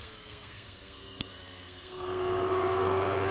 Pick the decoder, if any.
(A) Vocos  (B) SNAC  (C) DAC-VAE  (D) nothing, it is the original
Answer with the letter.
B